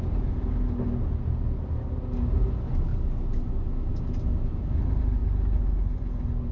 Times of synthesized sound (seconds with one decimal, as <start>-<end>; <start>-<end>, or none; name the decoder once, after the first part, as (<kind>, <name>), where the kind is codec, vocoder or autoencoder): none